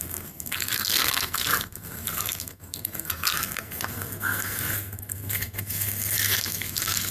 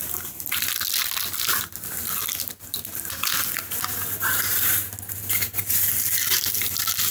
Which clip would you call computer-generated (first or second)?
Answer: first